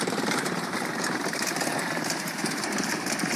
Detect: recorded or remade remade